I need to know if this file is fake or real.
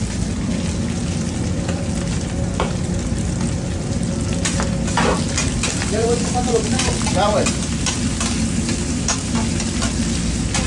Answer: real